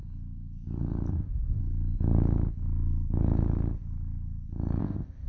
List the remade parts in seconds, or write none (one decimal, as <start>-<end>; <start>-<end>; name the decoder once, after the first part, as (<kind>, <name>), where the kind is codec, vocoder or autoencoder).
1.1-1.6 (codec, ZipCodec); 4.8-5.3